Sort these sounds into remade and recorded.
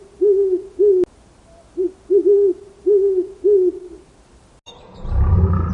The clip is recorded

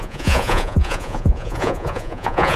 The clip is remade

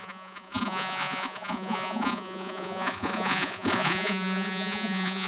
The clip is remade